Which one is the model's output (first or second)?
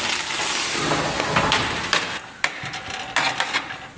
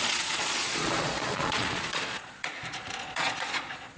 second